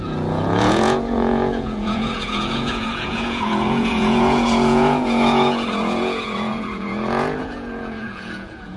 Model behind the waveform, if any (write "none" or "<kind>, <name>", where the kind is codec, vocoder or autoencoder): vocoder, Vocos